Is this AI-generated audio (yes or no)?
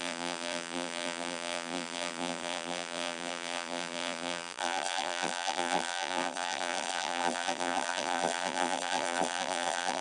yes